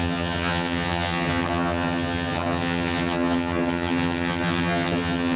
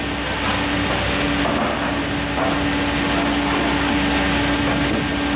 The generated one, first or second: first